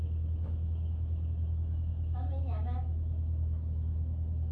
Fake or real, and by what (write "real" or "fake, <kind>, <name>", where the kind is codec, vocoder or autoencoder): fake, autoencoder, DAC-VAE